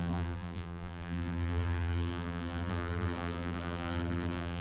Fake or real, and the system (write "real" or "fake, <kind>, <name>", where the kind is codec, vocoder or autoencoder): fake, vocoder, BigVGAN v2